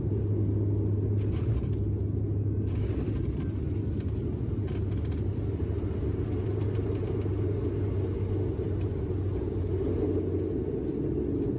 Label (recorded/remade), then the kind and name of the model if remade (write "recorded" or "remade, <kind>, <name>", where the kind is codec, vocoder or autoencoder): recorded